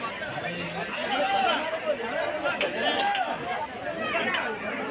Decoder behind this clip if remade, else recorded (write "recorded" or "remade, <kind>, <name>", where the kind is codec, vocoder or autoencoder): recorded